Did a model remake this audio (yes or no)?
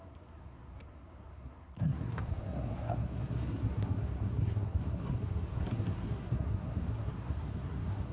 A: yes